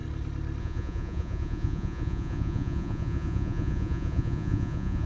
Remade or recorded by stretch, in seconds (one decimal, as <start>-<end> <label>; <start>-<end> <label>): 0.0-0.6 recorded; 0.6-5.1 remade